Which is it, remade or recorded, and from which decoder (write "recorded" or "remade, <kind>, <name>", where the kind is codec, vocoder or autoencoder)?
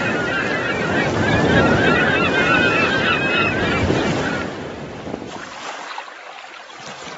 recorded